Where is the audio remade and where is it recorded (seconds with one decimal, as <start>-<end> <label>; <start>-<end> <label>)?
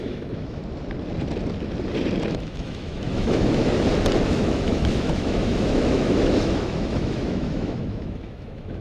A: 0.0-0.6 remade; 0.6-2.3 recorded; 2.3-3.6 remade; 3.6-4.3 recorded; 4.3-8.8 remade